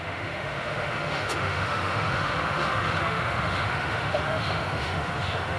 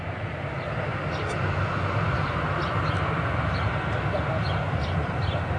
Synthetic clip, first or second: first